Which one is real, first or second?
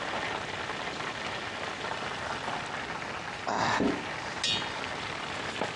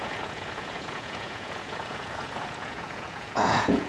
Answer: first